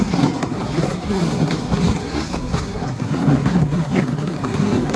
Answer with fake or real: fake